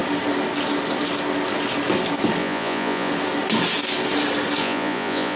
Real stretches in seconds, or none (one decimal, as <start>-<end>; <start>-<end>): 0.0-2.4; 3.1-4.6